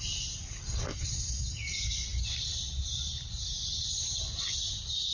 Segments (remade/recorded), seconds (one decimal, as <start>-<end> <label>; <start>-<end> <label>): 0.0-0.9 recorded; 0.9-1.7 remade; 1.7-5.1 recorded